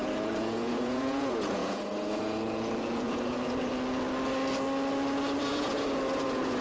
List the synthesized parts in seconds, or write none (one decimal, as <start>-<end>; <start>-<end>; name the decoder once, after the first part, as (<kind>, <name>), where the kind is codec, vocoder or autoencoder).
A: 0.0-3.7 (vocoder, Vocos); 5.4-6.6